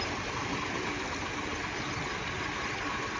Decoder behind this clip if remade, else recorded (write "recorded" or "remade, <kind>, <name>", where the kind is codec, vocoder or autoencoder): recorded